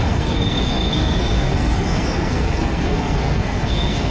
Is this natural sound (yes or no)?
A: no